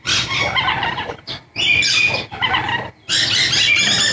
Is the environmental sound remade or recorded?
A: recorded